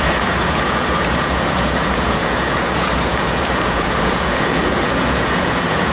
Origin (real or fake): fake